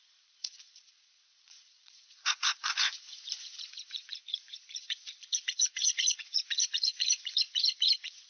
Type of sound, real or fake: fake